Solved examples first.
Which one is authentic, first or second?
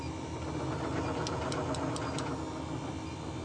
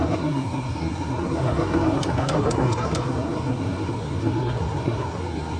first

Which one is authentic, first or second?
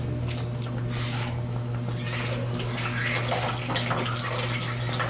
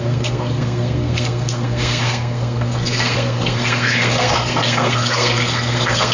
first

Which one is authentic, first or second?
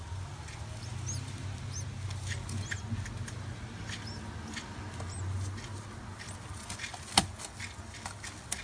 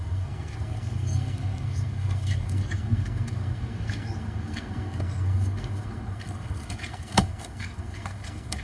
first